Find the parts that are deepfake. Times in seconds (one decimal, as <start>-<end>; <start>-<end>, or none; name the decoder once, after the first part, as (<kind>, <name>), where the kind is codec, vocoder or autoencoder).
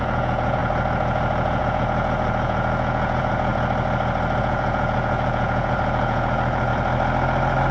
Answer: 0.0-0.6 (vocoder, Vocos); 1.6-3.5; 4.4-6.7